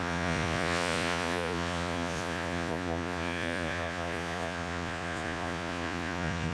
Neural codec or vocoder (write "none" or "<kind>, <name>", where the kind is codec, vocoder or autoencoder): vocoder, Vocos